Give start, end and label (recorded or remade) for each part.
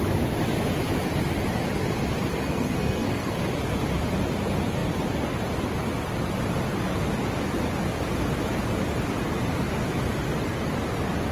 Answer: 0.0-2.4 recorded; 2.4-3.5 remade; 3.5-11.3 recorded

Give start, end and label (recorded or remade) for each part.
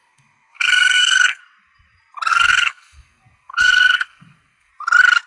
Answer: 0.0-1.4 remade; 1.4-2.3 recorded; 2.3-4.7 remade; 4.7-5.3 recorded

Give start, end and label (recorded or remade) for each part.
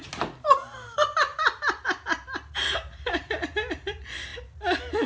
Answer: 0.0-5.1 recorded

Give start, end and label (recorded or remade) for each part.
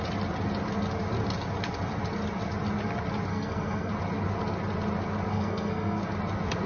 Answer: 0.0-3.3 recorded; 3.3-3.9 remade; 3.9-5.3 recorded; 5.3-6.0 remade; 6.0-6.7 recorded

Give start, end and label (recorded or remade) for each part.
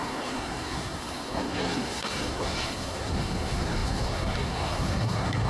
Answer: 0.0-5.5 remade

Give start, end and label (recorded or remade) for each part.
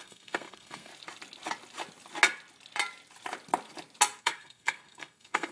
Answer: 0.0-0.9 remade; 0.9-4.2 recorded; 4.2-5.5 remade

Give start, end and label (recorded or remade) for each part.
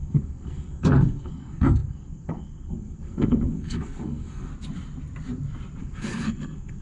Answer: 0.0-4.5 remade; 4.5-5.8 recorded; 5.8-6.8 remade